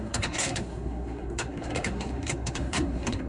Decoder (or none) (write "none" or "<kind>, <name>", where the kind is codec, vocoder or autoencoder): codec, SNAC